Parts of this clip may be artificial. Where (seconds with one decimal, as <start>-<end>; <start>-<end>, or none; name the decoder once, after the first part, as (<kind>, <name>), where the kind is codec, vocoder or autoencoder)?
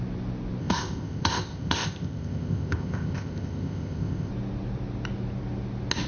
0.6-4.3 (codec, ZipCodec)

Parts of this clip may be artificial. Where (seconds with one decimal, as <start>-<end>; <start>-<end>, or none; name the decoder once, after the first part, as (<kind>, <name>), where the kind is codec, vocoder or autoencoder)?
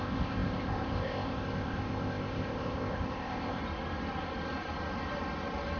0.0-3.6 (codec, ZipCodec)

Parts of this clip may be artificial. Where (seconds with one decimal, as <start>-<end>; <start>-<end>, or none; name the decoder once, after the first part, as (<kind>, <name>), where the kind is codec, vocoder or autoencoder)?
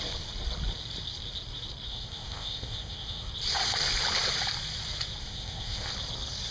1.9-3.3 (codec, ZipCodec); 5.2-5.9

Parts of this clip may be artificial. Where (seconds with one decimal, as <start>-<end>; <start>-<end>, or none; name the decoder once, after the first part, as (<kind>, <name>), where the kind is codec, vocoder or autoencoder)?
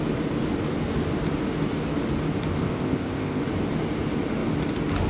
2.6-3.4 (codec, ZipCodec)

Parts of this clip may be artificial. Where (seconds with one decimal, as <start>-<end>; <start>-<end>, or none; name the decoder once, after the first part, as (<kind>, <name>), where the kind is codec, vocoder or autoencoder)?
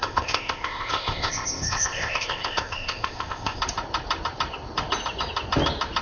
0.0-3.6 (codec, ZipCodec)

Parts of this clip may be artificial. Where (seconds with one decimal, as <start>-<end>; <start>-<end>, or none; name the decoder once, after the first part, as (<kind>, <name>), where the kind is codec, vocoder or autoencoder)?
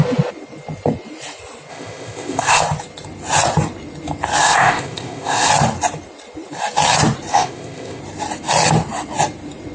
1.7-2.6 (codec, ZipCodec); 4.4-5.5; 7.3-8.0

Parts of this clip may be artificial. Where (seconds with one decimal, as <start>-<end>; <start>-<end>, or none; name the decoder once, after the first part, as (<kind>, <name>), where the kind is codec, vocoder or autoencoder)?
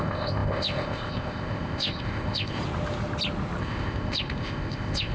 0.0-2.6 (codec, ZipCodec); 3.6-5.1